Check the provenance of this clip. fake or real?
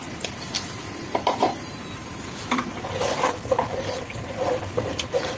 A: fake